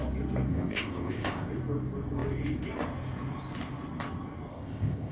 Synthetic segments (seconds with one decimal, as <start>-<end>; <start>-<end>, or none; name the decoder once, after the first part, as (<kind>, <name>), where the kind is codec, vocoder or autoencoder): 0.5-1.5 (codec, ZipCodec); 4.5-5.1